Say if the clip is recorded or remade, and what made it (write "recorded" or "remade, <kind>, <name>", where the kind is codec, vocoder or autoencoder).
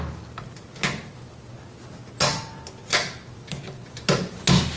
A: recorded